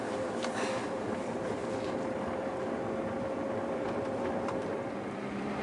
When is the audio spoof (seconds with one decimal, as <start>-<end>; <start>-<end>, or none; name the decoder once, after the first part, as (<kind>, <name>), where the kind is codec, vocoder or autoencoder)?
0.9-1.6 (vocoder, BigVGAN v2); 3.6-5.6